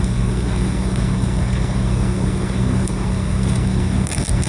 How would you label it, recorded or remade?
remade